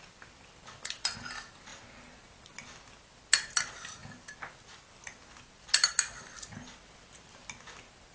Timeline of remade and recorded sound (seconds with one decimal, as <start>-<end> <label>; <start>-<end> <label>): 0.0-8.1 recorded